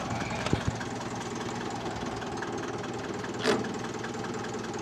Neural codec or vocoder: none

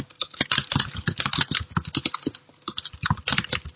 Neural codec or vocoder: none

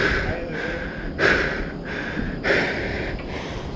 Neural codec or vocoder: none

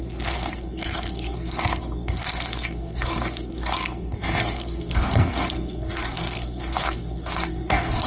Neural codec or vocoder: codec, SNAC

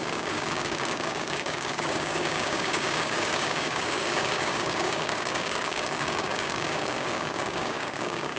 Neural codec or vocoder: codec, DAC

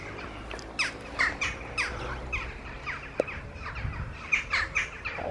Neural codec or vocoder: none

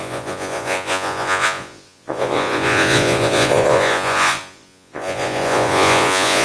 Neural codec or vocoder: vocoder, Vocos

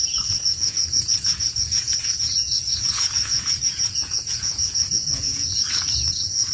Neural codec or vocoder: vocoder, Vocos